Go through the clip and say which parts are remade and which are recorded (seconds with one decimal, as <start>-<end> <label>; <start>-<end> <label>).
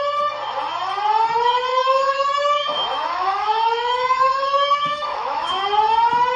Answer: 0.0-1.7 recorded; 1.7-5.5 remade; 5.5-6.4 recorded